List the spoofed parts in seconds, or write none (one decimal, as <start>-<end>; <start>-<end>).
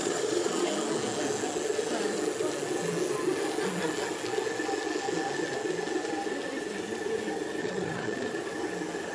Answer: 0.0-0.7; 7.6-8.4